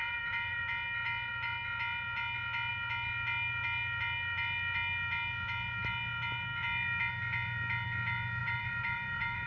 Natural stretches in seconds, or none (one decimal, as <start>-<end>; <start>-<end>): 0.6-8.4